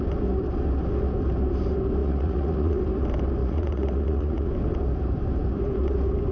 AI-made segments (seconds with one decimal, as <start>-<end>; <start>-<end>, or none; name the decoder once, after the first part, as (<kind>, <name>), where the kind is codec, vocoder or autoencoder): 2.0-2.8 (vocoder, Vocos); 3.4-4.5